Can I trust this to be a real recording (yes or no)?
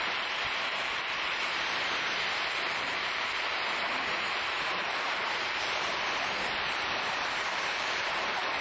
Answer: no